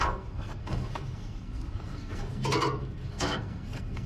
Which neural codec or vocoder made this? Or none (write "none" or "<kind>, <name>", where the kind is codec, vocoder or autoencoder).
codec, SNAC